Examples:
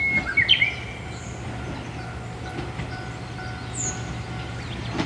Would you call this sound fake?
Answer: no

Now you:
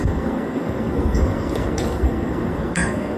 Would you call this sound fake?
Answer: yes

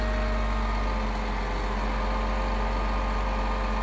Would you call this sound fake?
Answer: no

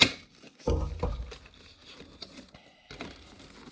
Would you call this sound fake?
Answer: no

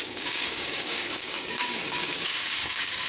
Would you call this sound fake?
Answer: yes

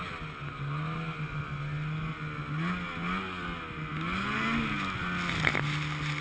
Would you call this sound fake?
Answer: no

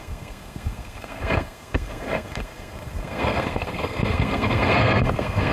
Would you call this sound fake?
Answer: yes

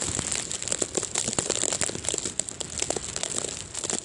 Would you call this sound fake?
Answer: no